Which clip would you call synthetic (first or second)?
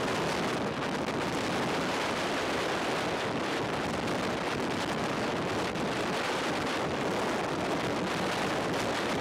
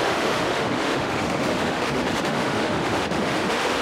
second